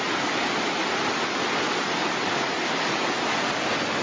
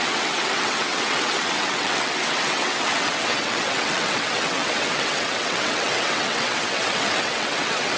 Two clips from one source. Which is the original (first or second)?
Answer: first